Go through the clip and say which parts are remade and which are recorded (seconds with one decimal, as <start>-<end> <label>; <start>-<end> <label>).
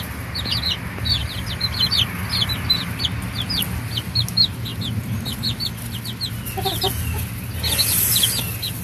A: 0.0-1.2 recorded; 1.2-3.0 remade; 3.0-8.8 recorded